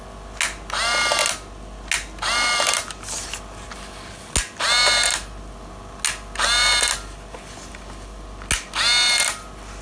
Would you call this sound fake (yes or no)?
no